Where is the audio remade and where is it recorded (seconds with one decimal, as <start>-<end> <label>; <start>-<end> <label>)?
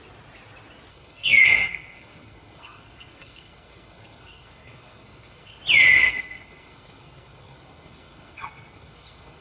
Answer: 0.0-0.9 recorded; 0.9-5.6 remade; 5.6-6.0 recorded; 6.0-9.4 remade